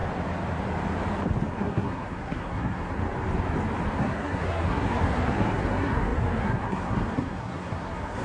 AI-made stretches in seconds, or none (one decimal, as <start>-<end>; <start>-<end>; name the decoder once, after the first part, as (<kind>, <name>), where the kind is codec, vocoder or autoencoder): 1.5-3.0 (codec, SNAC); 4.0-8.2